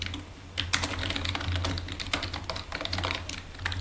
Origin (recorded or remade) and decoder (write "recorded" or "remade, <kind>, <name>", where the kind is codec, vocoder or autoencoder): recorded